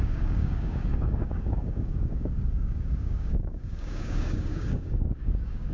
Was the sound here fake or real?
fake